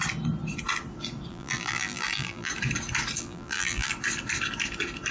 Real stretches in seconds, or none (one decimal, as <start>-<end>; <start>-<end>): 0.0-1.3; 2.5-3.2; 3.9-5.1